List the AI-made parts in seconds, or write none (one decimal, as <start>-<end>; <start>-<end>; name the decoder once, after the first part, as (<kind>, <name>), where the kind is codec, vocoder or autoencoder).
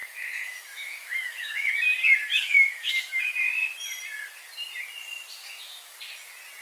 0.0-1.7 (autoencoder, DAC-VAE); 2.3-3.2; 5.4-6.0